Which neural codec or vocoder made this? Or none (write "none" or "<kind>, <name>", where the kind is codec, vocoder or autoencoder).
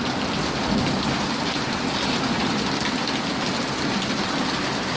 none